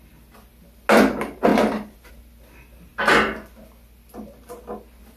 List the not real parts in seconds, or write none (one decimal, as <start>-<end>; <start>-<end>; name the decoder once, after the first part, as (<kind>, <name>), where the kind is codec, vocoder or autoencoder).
none